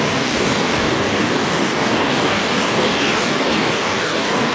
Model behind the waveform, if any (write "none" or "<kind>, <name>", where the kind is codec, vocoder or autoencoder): codec, DAC